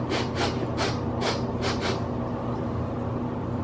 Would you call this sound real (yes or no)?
yes